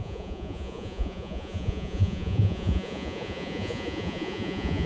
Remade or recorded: remade